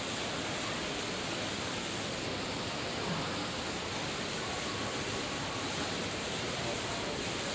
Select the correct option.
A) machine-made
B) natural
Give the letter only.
B